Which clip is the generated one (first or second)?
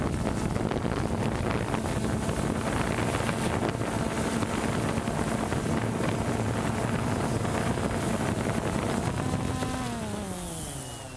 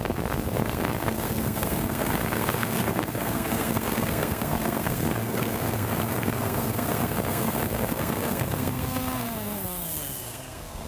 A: second